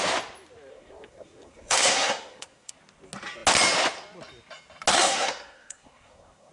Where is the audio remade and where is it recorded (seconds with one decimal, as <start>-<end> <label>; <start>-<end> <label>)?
0.0-0.7 recorded; 0.7-2.8 remade; 2.8-4.9 recorded; 4.9-6.5 remade